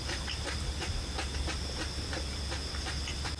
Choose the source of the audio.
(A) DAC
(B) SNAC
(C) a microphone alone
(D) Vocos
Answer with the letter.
C